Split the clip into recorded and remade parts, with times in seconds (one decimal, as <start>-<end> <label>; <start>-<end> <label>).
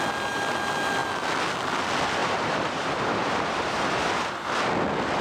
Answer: 0.0-2.2 recorded; 2.2-4.6 remade; 4.6-5.2 recorded